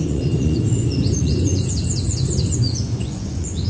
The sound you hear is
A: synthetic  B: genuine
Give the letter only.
A